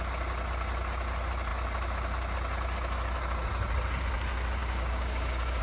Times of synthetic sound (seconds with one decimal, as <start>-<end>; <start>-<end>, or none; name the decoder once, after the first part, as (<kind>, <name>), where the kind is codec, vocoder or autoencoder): 4.6-5.6 (codec, DAC)